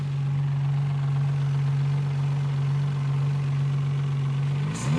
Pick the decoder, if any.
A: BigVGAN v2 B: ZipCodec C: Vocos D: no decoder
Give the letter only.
D